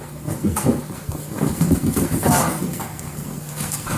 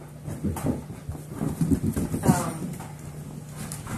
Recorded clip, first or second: second